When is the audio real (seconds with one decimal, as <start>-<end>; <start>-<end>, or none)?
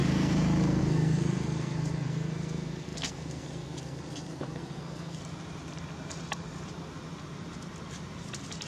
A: 5.2-8.7